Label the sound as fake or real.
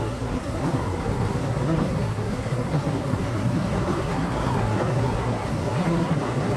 fake